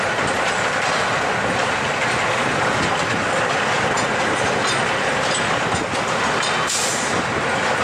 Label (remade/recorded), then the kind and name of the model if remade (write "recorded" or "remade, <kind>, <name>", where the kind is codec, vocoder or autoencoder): recorded